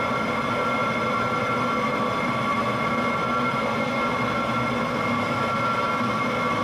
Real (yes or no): yes